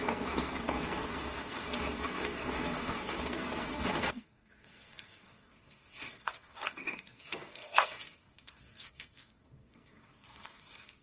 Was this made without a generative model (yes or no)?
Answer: no